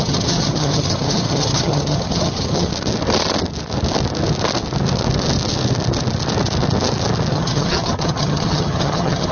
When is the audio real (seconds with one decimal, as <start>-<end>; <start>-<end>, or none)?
2.7-7.3